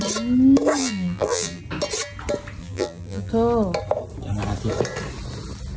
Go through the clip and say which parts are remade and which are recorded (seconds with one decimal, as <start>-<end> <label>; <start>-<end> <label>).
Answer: 0.0-0.8 recorded; 0.8-1.6 remade; 1.6-2.6 recorded; 2.6-3.3 remade; 3.3-5.8 recorded